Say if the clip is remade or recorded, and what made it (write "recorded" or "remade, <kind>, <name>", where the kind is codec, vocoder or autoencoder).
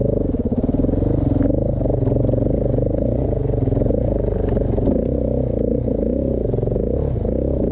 recorded